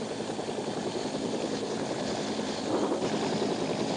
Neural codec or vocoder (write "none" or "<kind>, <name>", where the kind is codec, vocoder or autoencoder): none